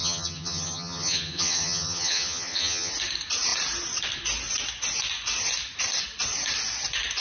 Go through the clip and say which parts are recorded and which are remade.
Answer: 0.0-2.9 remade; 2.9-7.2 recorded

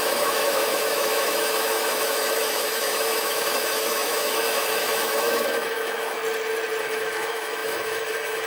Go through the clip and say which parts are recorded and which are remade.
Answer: 0.0-6.2 remade; 6.2-6.8 recorded; 6.8-8.5 remade

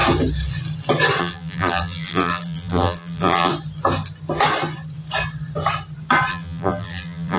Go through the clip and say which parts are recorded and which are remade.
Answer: 0.0-1.2 recorded; 1.2-3.5 remade; 3.5-6.3 recorded; 6.3-7.4 remade

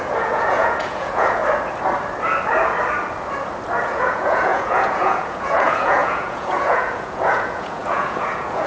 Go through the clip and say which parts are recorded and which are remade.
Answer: 0.0-1.4 remade; 1.4-3.8 recorded; 3.8-8.7 remade

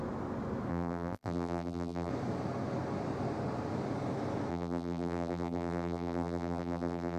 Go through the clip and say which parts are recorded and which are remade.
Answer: 0.0-0.7 recorded; 0.7-2.1 remade; 2.1-4.5 recorded; 4.5-7.2 remade

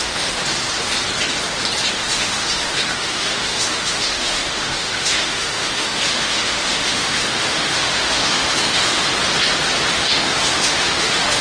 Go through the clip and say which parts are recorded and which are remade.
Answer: 0.0-0.4 remade; 0.4-1.9 recorded; 1.9-9.0 remade; 9.0-9.9 recorded; 9.9-11.4 remade

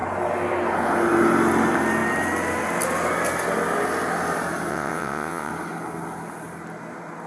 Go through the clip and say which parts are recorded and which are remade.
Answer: 0.0-4.7 recorded; 4.7-5.5 remade; 5.5-7.3 recorded

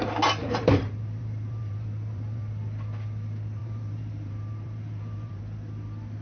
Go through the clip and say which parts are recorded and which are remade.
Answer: 0.0-0.4 recorded; 0.4-2.4 remade; 2.4-3.6 recorded; 3.6-5.4 remade; 5.4-6.2 recorded